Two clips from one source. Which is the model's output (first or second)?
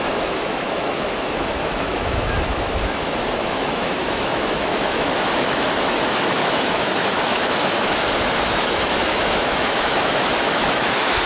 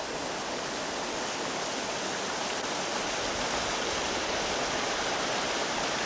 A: first